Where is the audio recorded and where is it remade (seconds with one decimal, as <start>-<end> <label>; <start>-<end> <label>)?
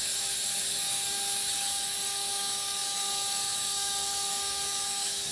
0.0-5.3 remade